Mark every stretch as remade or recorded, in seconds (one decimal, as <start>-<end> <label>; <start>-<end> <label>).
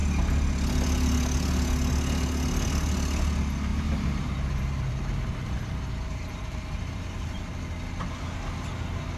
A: 0.0-3.7 recorded; 3.7-7.4 remade; 7.4-9.2 recorded